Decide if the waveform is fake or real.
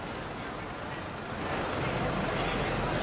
real